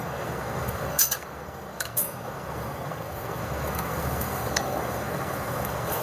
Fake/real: fake